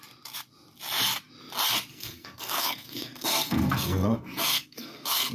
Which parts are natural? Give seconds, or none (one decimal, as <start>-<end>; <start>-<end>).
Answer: 0.0-1.9